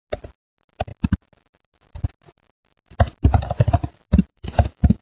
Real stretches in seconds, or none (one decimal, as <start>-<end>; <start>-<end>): 0.0-4.3